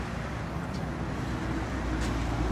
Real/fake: real